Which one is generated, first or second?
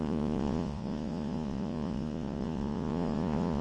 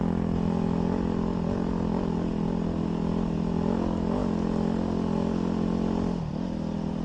first